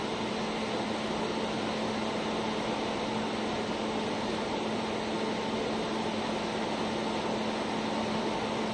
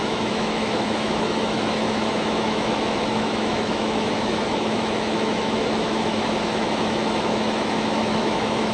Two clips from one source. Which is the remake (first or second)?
second